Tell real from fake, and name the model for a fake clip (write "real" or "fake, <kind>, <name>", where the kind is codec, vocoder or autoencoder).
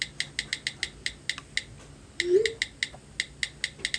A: real